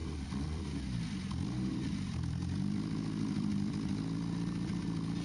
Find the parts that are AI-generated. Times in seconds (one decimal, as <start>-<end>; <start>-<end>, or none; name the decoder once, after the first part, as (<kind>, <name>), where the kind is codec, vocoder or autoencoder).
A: 0.0-0.6 (vocoder, BigVGAN v2); 1.7-4.8